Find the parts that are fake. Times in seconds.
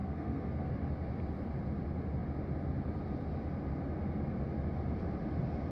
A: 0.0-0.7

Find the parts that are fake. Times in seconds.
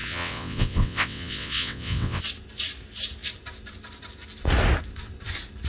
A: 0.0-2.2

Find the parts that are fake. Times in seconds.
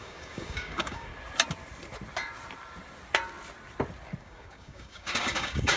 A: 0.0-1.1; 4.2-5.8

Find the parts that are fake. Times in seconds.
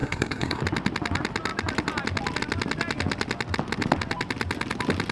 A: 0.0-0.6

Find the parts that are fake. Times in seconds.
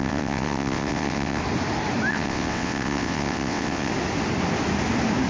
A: 0.0-1.4; 2.1-3.9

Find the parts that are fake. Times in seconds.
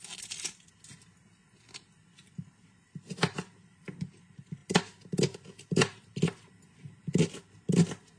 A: none